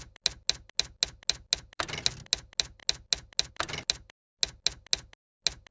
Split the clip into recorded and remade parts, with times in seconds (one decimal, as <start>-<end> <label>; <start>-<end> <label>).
0.0-5.7 recorded